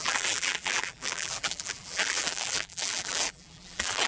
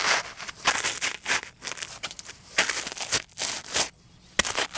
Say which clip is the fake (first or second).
first